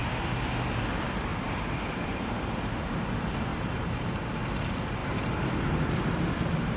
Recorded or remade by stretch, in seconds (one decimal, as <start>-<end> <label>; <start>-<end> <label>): 0.0-1.3 recorded; 1.3-2.4 remade; 2.4-3.5 recorded; 3.5-4.5 remade; 4.5-5.0 recorded; 5.0-5.5 remade; 5.5-6.8 recorded

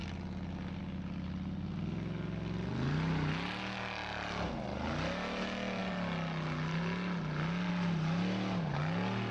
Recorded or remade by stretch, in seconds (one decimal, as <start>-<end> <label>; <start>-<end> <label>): 0.0-9.3 recorded